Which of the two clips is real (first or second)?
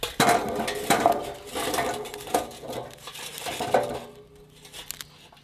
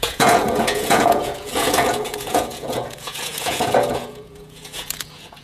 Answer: first